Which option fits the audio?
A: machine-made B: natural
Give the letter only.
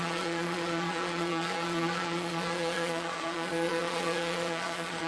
A